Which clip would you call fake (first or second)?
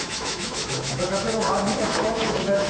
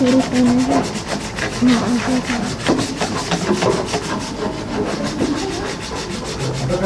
first